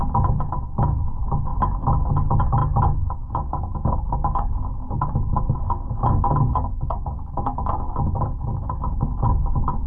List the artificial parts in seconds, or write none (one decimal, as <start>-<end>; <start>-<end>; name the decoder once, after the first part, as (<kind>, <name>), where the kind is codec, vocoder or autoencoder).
0.0-9.9 (autoencoder, DAC-VAE)